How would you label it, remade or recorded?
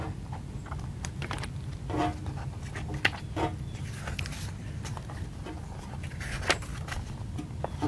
recorded